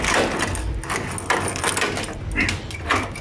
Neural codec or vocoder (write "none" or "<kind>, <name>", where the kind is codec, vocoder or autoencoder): none